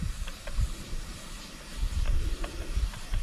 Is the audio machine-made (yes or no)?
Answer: yes